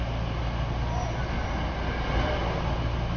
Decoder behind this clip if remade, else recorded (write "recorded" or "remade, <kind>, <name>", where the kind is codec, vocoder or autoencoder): recorded